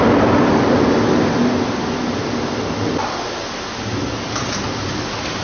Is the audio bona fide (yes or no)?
yes